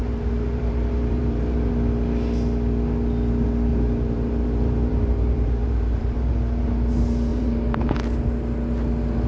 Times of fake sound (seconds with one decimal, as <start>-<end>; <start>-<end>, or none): 0.0-1.7; 3.7-6.3; 7.3-7.9